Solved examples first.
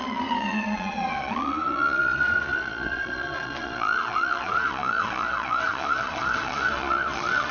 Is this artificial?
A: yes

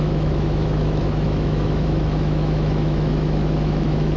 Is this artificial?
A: yes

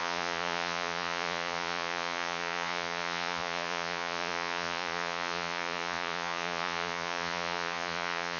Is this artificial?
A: yes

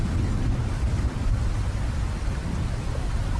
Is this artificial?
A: no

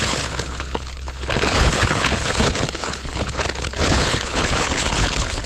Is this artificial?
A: yes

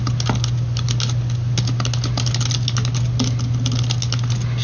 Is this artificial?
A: no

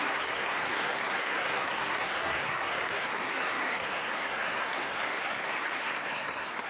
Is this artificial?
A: yes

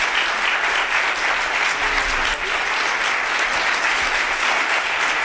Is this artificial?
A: no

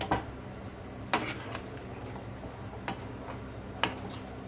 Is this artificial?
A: no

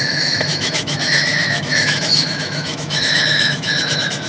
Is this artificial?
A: yes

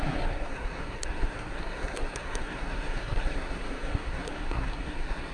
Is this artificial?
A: yes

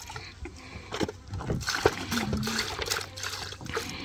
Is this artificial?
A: no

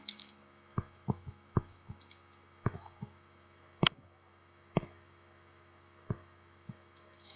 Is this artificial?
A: yes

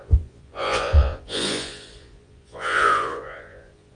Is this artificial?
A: yes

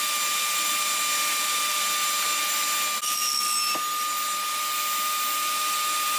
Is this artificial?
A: no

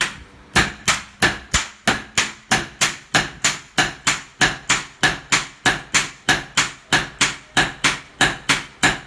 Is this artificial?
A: no